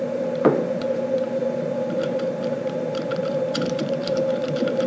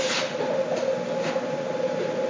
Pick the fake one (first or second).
first